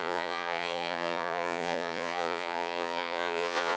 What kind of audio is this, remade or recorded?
remade